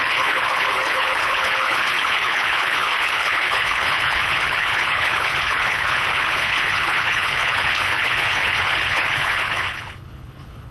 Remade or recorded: remade